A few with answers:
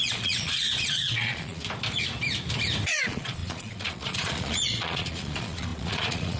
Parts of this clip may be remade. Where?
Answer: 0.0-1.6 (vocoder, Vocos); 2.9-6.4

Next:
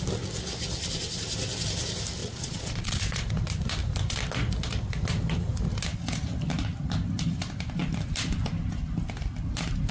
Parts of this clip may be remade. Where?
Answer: 2.2-3.3 (vocoder, Vocos)

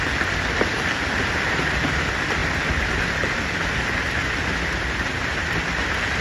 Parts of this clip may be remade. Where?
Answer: none

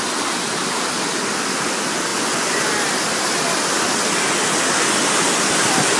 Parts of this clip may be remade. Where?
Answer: 2.1-2.7 (vocoder, Vocos)